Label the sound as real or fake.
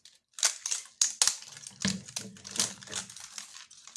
real